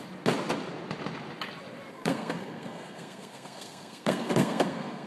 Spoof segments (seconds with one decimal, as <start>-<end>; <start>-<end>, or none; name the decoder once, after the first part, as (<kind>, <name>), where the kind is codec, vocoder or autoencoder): 1.9-5.1 (codec, SNAC)